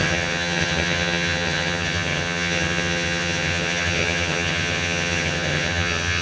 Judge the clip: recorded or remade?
remade